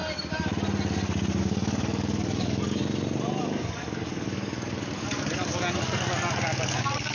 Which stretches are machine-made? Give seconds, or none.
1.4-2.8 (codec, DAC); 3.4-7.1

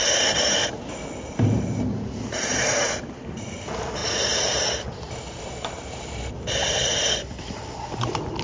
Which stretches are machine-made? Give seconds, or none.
none

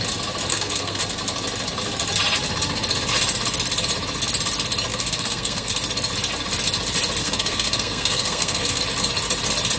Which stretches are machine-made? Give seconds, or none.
0.5-1.0 (codec, SNAC); 4.9-5.7; 7.2-8.8

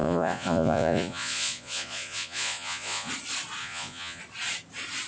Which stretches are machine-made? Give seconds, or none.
0.0-3.1 (vocoder, Vocos); 3.6-4.2

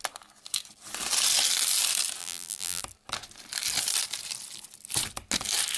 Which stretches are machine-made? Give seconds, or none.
2.2-2.8 (vocoder, BigVGAN v2)